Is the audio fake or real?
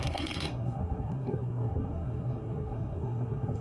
fake